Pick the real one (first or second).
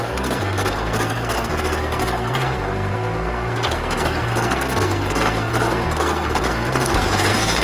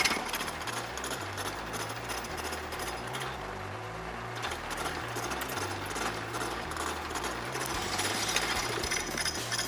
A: second